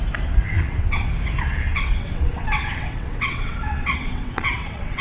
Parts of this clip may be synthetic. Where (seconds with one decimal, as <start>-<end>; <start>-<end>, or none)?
0.5-1.1; 1.7-5.0